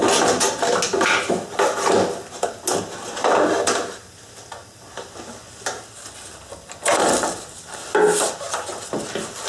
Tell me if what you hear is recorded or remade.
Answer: recorded